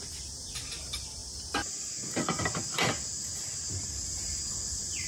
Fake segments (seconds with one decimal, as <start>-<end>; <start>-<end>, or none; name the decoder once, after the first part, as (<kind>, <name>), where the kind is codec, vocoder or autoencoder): none